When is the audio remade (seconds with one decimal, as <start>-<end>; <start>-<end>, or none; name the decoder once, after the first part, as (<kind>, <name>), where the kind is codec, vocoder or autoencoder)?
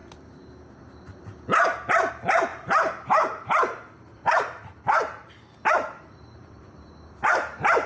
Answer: 2.1-7.9 (vocoder, BigVGAN v2)